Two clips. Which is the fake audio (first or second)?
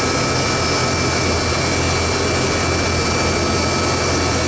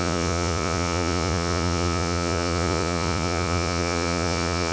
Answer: second